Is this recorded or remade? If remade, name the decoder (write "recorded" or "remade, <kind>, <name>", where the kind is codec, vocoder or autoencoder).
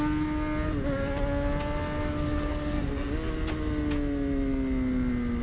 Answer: recorded